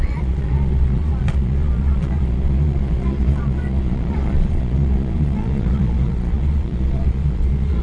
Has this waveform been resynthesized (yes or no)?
yes